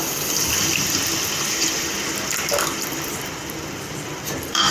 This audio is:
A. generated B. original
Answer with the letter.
A